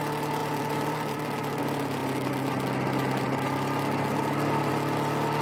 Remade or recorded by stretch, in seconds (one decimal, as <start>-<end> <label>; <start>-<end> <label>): 0.0-0.4 recorded; 0.4-1.6 remade; 1.6-5.4 recorded